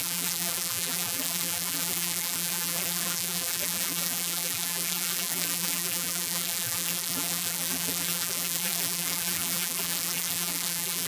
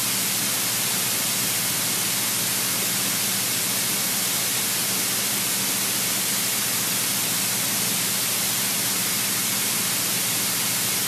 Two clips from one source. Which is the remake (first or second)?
first